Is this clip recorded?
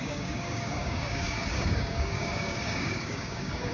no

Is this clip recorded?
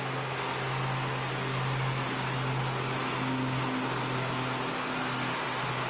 yes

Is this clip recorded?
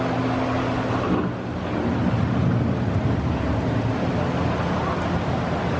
yes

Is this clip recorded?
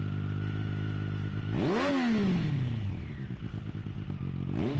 yes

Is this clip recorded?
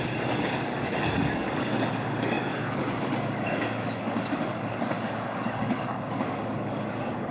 no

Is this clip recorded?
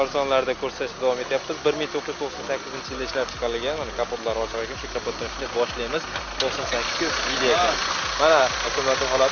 yes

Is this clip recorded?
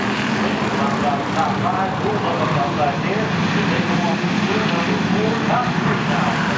yes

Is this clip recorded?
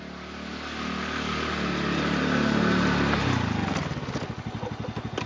yes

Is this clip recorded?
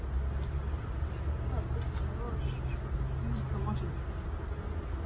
yes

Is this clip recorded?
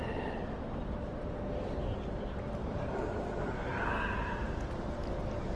yes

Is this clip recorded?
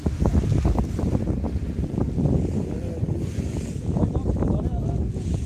yes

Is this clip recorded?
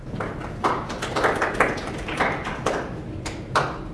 yes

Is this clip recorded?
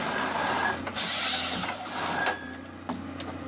yes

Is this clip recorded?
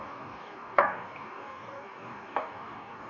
no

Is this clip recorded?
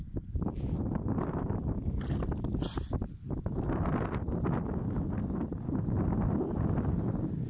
yes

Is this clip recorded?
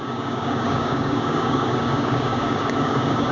no